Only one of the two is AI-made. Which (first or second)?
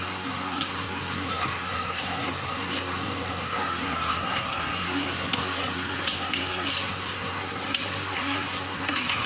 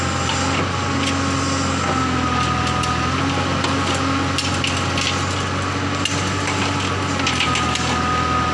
first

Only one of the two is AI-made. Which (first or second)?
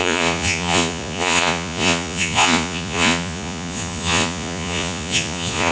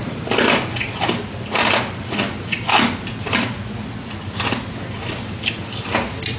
first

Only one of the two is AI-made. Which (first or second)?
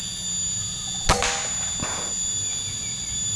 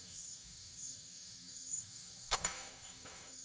second